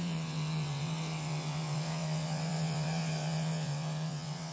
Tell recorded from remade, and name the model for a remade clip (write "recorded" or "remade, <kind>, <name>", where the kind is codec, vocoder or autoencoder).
remade, vocoder, WaveNeXt